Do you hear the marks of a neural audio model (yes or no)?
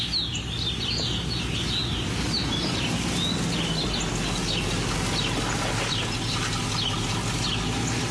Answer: no